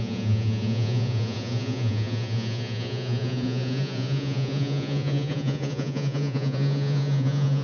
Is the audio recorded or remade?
remade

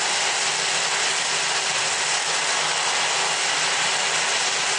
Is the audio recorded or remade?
recorded